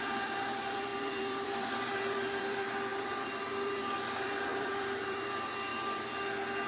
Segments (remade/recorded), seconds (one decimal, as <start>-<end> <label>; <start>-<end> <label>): 0.0-5.7 remade; 5.7-6.7 recorded